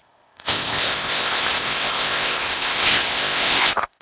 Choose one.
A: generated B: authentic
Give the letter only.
A